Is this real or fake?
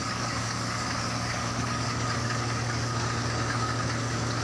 fake